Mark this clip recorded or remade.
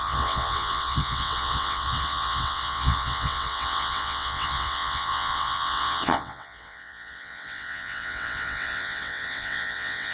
remade